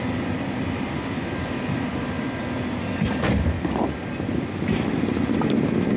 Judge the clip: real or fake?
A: real